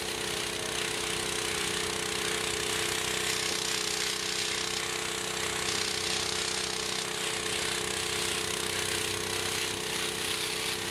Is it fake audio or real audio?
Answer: real